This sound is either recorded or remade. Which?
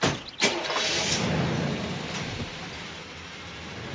recorded